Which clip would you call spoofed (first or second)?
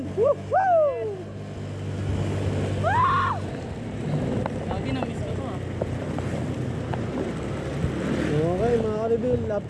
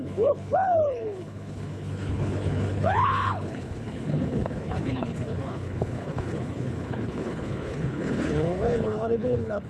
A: second